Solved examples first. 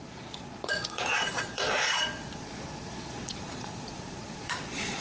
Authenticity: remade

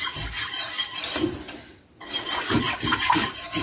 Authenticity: recorded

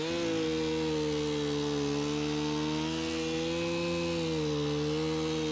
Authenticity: recorded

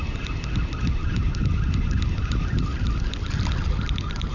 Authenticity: recorded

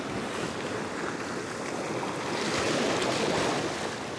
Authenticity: recorded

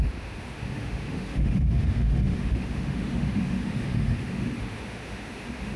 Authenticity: remade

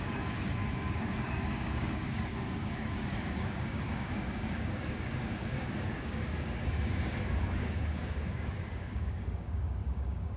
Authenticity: remade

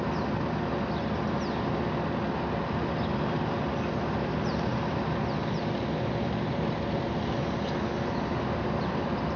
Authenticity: recorded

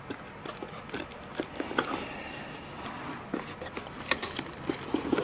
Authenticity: recorded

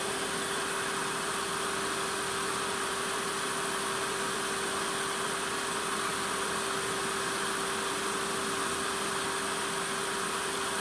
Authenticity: recorded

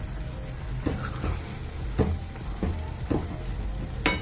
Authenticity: recorded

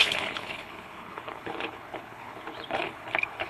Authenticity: remade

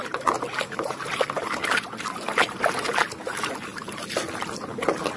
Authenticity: recorded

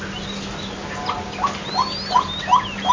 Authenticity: recorded